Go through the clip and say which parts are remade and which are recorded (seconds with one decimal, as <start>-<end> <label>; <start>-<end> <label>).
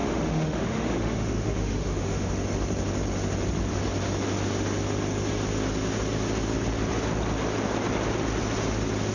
0.0-2.3 remade; 2.3-9.1 recorded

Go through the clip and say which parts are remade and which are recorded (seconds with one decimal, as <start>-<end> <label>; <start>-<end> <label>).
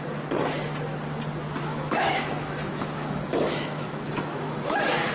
0.0-1.7 recorded; 1.7-5.1 remade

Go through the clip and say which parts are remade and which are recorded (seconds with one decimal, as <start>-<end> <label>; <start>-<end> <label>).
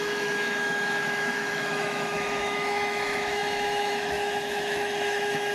0.0-5.5 remade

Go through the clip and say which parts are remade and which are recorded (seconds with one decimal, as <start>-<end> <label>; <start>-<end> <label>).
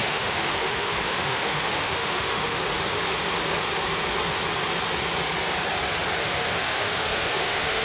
0.0-2.6 remade; 2.6-6.2 recorded; 6.2-7.8 remade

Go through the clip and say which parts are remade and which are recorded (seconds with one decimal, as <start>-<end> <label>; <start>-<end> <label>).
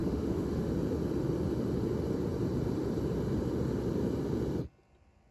0.0-0.7 remade; 0.7-5.3 recorded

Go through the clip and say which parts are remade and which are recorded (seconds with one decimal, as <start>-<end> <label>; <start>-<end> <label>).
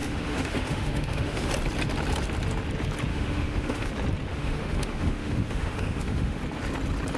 0.0-1.5 remade; 1.5-3.1 recorded; 3.1-3.9 remade; 3.9-4.3 recorded; 4.3-6.4 remade; 6.4-7.2 recorded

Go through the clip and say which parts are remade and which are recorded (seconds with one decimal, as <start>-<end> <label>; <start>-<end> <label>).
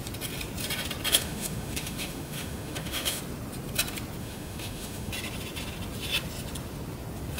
0.0-1.1 recorded; 1.1-3.2 remade; 3.2-4.2 recorded; 4.2-5.1 remade; 5.1-7.4 recorded